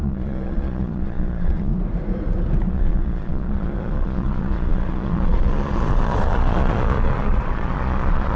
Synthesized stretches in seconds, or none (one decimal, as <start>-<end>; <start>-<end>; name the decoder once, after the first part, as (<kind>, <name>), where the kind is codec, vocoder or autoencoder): 0.0-1.7 (vocoder, Vocos); 2.7-8.4